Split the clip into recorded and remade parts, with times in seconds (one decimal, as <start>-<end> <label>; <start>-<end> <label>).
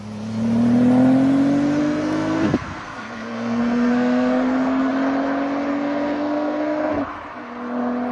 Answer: 0.0-1.8 recorded; 1.8-4.9 remade; 4.9-5.7 recorded; 5.7-6.9 remade; 6.9-8.1 recorded